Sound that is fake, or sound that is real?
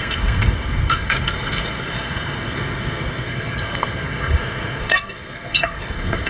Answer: fake